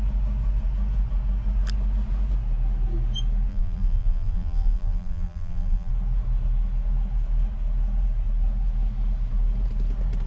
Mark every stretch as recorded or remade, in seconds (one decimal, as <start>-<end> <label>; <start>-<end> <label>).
0.0-3.5 recorded; 3.5-5.9 remade; 5.9-10.3 recorded